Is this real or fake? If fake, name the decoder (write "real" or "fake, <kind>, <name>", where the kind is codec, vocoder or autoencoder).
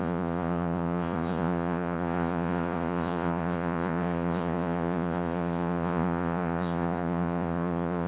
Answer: fake, vocoder, Vocos